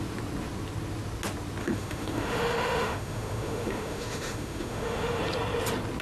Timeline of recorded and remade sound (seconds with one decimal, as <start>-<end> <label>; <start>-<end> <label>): 0.0-1.6 recorded; 1.6-5.2 remade; 5.2-6.0 recorded